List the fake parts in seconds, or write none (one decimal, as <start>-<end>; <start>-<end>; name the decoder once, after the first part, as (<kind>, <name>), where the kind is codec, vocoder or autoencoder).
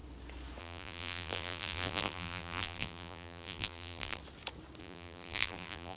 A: 0.6-4.2 (vocoder, BigVGAN v2); 4.8-6.0